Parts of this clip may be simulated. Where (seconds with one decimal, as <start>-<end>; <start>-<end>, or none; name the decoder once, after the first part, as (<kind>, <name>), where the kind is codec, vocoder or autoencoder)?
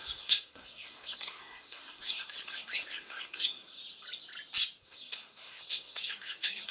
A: 0.0-3.8 (codec, SNAC); 4.8-6.7